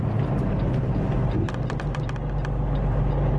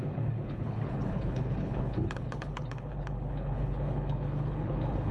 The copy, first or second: second